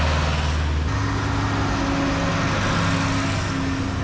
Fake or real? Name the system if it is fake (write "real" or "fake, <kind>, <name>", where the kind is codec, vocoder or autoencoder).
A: real